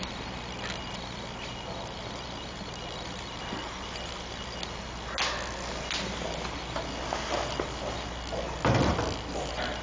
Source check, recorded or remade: recorded